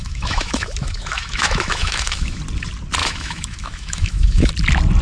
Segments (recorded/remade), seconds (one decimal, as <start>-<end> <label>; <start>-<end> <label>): 0.0-2.4 remade; 2.4-3.0 recorded; 3.0-4.5 remade; 4.5-5.0 recorded